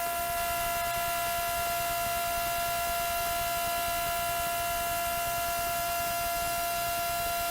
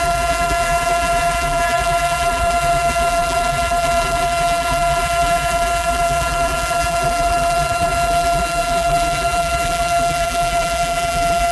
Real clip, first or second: first